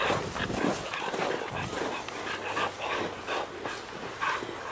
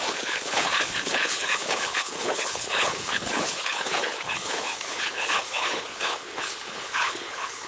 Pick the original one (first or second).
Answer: first